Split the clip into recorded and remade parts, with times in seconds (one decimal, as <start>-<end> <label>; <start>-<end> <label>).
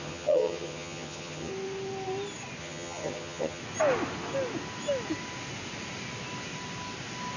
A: 0.0-1.5 remade; 1.5-2.6 recorded; 2.6-3.6 remade; 3.6-7.4 recorded